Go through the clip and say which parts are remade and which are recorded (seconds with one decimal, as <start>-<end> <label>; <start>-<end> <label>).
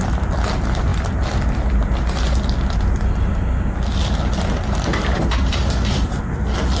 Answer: 0.0-4.9 recorded; 4.9-6.2 remade; 6.2-6.8 recorded